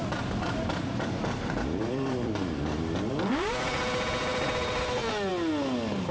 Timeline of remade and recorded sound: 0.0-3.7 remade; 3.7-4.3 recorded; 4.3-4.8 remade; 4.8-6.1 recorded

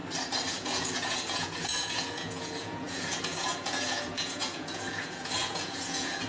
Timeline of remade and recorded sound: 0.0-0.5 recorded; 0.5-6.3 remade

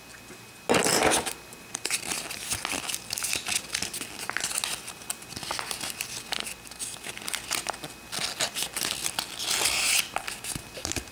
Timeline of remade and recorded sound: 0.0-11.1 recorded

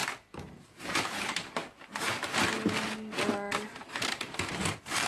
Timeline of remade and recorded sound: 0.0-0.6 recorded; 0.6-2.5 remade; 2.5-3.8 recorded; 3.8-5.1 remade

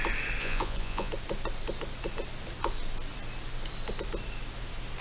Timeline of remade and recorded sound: 0.0-0.4 recorded; 0.4-1.1 remade; 1.1-5.0 recorded